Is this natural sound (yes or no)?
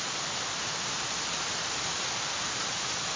yes